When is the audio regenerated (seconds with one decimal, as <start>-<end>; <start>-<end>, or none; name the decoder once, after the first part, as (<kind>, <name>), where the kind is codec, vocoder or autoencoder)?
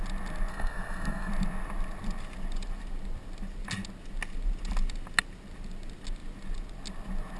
0.5-1.3 (codec, SNAC)